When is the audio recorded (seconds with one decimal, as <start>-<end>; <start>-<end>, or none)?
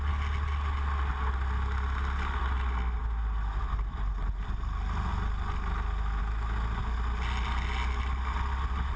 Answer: 0.0-9.0